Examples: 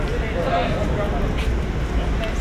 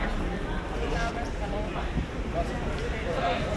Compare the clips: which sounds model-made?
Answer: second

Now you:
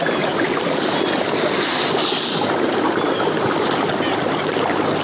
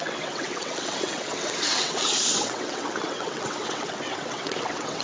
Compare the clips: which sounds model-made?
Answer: second